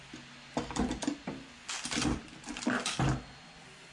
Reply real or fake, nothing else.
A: real